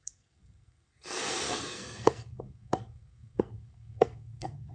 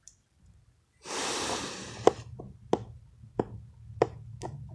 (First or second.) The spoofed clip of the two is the first